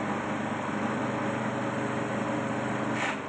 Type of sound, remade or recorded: recorded